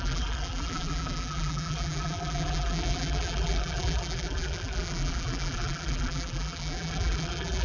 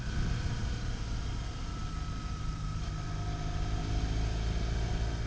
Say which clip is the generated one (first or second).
first